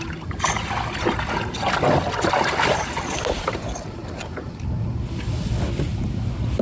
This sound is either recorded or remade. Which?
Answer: recorded